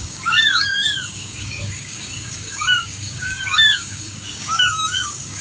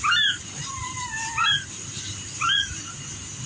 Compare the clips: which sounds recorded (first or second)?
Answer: second